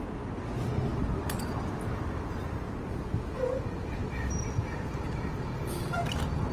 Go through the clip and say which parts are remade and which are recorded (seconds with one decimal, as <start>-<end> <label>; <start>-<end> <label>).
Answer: 0.0-6.5 recorded